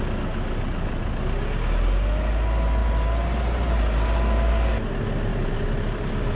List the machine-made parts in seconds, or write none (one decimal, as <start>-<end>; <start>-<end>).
5.3-6.3